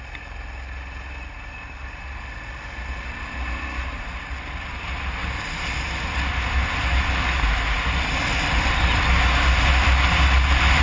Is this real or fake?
real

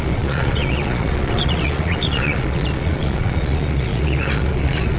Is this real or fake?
fake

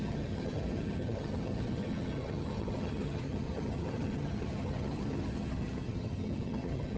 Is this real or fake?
fake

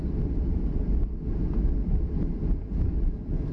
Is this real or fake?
real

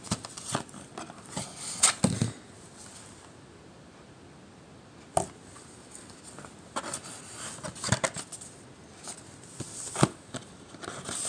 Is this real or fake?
real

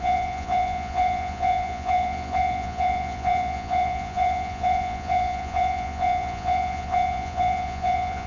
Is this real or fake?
fake